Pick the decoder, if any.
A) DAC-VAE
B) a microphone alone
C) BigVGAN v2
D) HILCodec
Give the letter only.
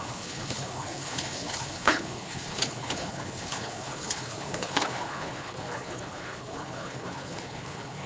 D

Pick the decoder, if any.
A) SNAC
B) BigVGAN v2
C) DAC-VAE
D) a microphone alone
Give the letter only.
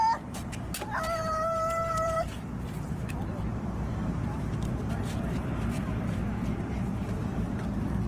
B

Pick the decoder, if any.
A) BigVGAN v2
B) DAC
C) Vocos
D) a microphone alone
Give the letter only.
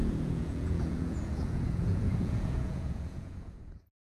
C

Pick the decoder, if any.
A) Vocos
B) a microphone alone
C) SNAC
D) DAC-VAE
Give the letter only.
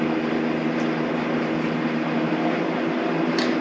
B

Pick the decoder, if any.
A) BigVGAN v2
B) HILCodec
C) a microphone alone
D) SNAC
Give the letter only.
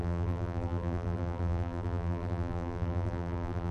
A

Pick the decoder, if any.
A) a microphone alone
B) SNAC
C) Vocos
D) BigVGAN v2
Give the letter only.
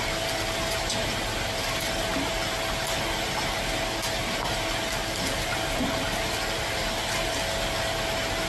A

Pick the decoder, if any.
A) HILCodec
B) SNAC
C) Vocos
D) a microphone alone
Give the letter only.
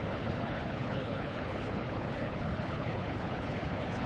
A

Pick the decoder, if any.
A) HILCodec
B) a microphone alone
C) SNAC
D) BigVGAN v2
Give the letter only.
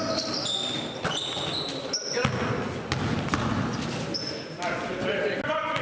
B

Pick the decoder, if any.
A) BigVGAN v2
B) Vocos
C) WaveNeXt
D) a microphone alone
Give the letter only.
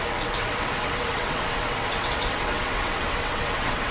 C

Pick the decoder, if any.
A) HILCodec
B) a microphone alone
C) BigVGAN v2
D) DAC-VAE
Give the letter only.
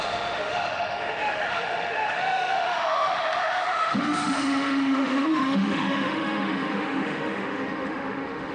D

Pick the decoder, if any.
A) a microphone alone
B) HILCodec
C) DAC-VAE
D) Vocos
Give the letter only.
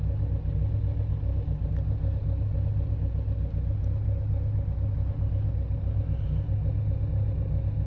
A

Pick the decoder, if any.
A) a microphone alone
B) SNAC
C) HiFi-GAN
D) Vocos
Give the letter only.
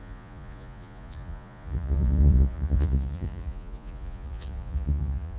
D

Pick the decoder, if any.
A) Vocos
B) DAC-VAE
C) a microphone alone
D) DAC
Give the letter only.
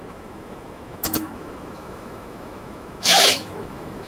B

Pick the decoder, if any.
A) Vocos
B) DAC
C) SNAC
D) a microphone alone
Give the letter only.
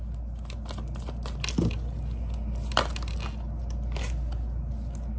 D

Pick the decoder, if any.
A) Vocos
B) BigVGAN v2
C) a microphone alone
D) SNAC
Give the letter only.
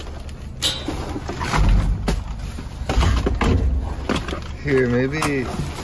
C